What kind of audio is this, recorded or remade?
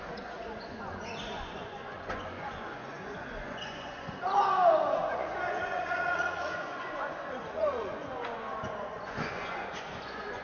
remade